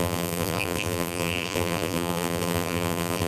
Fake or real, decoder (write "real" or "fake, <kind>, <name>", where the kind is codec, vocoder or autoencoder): fake, vocoder, BigVGAN v2